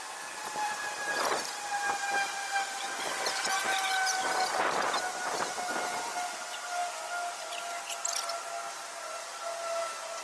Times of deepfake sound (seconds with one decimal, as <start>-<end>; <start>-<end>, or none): 0.4-1.7